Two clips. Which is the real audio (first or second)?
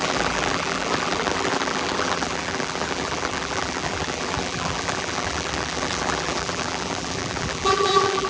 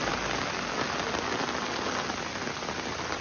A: second